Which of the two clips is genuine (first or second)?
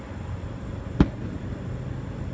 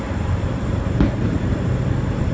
first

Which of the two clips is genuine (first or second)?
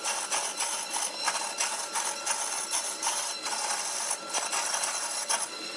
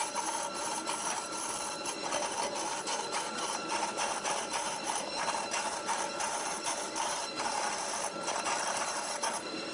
first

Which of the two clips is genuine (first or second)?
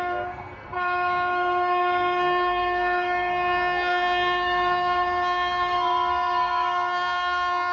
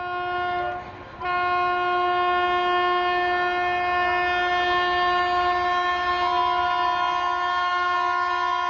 second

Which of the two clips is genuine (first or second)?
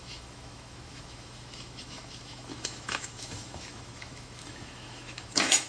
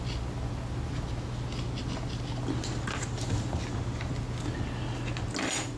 second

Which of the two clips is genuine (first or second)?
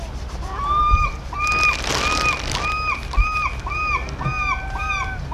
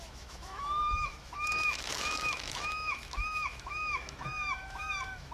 first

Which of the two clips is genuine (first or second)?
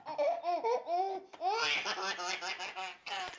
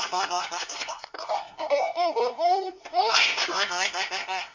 first